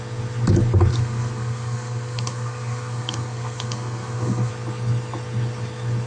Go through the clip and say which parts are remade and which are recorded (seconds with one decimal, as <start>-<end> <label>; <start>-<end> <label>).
0.0-0.9 recorded; 0.9-4.5 remade; 4.5-6.1 recorded